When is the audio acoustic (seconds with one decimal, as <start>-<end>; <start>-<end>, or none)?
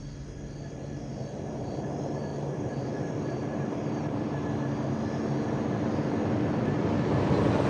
0.0-1.1; 1.7-2.3; 4.5-7.7